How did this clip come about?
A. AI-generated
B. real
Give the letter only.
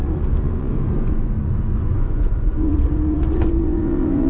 A